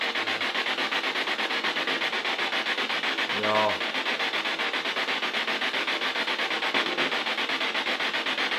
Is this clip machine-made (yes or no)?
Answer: no